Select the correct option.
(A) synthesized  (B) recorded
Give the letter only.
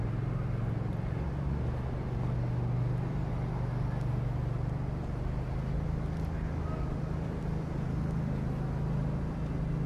B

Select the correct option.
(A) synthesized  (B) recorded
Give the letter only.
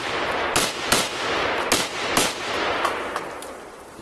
B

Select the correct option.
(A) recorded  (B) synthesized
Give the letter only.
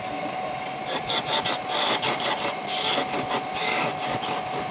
A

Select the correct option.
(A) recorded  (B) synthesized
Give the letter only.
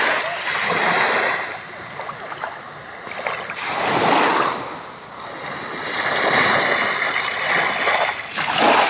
A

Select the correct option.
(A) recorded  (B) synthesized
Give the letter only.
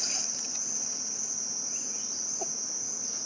A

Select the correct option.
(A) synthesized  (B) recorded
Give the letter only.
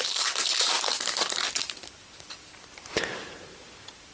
A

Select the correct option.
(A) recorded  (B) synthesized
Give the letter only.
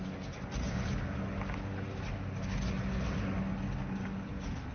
A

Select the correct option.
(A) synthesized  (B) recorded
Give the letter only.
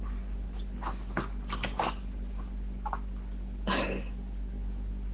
B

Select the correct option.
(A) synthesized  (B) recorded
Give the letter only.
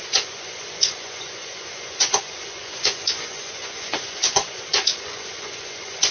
A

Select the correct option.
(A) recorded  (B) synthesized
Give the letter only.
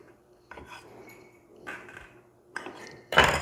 B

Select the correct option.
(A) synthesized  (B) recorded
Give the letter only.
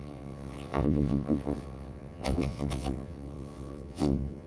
A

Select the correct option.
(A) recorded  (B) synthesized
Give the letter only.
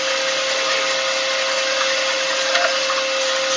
A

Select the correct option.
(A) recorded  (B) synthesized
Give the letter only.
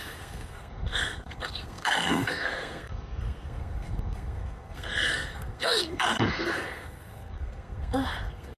B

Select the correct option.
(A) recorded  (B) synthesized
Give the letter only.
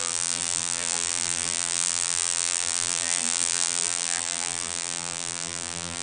B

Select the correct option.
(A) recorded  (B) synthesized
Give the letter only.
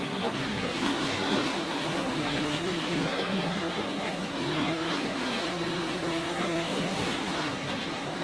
B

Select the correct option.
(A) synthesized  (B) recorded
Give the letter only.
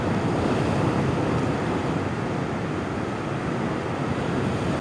B